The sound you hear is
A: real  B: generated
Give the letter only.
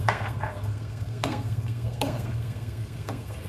B